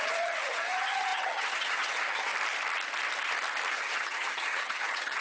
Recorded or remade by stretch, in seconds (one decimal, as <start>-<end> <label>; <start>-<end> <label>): 0.0-2.3 remade; 2.3-3.7 recorded; 3.7-5.2 remade